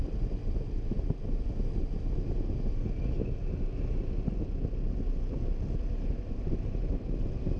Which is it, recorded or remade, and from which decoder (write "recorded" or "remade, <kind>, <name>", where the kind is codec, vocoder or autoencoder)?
recorded